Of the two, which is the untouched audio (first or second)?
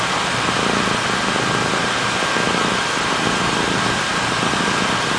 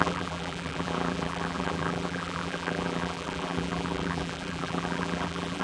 first